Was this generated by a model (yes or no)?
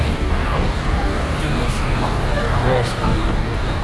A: yes